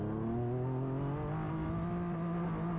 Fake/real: real